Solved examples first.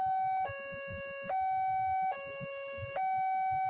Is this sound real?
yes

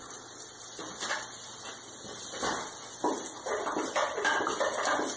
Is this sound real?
yes